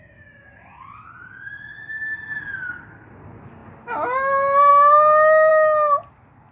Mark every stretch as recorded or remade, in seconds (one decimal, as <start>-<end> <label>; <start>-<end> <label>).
0.0-6.5 recorded